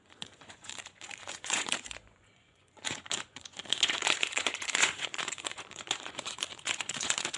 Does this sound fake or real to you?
fake